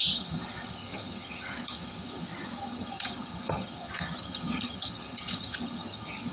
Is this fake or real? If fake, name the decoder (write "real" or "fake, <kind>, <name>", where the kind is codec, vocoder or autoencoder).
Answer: fake, vocoder, HiFi-GAN